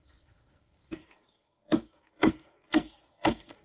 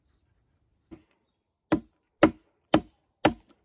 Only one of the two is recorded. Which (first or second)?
second